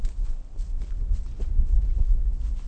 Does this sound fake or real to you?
real